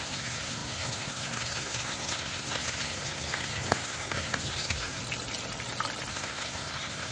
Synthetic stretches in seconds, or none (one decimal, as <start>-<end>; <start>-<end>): 0.0-5.0; 6.1-7.1